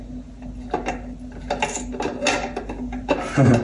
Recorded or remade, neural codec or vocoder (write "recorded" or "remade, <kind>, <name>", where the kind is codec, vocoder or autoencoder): recorded